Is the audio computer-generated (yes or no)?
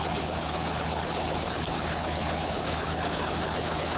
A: yes